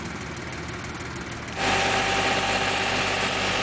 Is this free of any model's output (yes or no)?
yes